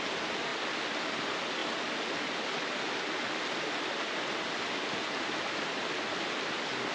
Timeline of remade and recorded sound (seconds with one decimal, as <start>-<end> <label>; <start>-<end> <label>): 0.0-6.9 recorded